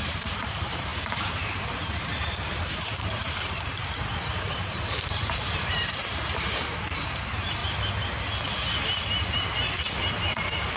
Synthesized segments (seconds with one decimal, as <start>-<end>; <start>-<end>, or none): 0.0-7.6; 10.1-10.8